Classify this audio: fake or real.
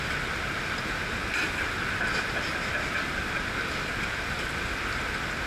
real